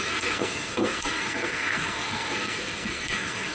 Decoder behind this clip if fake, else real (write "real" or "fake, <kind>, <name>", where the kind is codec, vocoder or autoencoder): fake, codec, SNAC